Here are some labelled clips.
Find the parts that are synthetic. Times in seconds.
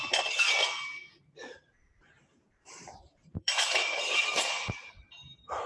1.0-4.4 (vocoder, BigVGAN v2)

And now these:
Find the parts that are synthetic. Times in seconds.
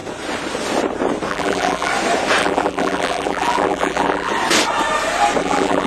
1.3-1.9 (vocoder, BigVGAN v2); 2.4-4.3; 5.4-5.9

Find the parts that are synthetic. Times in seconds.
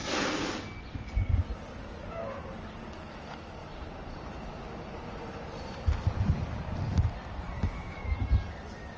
0.0-0.6 (vocoder, BigVGAN v2); 3.6-5.8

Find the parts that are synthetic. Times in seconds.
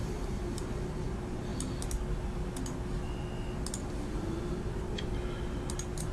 0.0-0.7 (vocoder, BigVGAN v2)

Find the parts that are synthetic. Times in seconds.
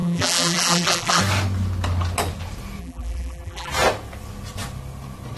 0.0-1.2 (vocoder, BigVGAN v2); 2.8-3.7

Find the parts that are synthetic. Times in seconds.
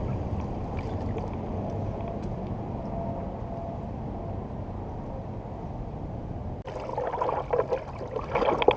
none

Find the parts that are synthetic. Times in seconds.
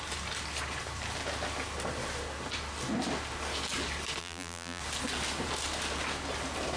4.2-4.8 (vocoder, BigVGAN v2)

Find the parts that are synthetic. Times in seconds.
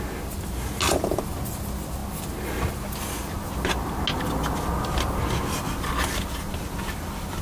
none